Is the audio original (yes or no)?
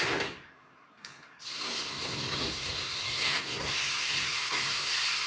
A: no